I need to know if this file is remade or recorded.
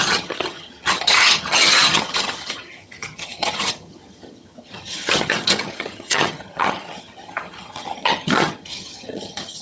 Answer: remade